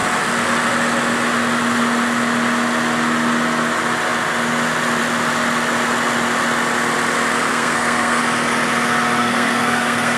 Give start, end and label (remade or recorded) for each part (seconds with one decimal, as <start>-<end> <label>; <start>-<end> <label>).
0.0-7.5 recorded; 7.5-8.2 remade; 8.2-9.2 recorded; 9.2-10.2 remade